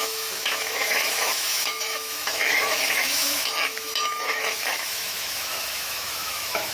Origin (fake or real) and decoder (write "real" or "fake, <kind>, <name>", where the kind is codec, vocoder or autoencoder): fake, autoencoder, DAC-VAE